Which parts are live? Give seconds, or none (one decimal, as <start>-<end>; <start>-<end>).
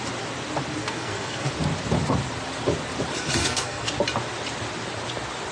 0.0-0.8; 1.5-3.4; 3.9-5.5